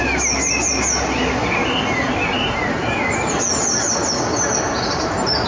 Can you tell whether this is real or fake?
real